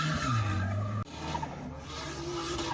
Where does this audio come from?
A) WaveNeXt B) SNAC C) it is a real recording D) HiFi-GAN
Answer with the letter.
C